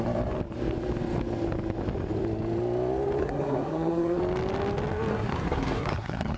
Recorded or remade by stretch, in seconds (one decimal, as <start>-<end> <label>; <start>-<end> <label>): 0.0-3.2 recorded; 3.2-4.2 remade; 4.2-5.1 recorded; 5.1-6.4 remade